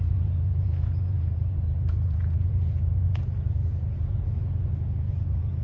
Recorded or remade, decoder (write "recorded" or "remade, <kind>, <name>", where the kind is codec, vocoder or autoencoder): remade, vocoder, Vocos